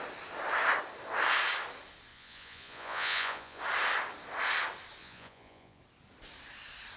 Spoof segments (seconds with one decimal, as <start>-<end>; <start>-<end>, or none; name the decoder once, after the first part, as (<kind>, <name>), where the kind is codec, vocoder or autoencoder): 2.1-3.6 (vocoder, Vocos); 5.0-5.8